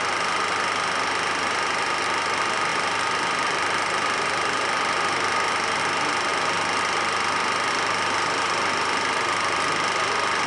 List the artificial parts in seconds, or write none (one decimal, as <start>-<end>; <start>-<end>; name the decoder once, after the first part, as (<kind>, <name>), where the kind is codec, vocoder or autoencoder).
none